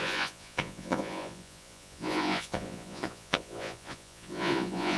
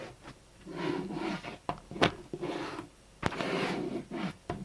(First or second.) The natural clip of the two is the second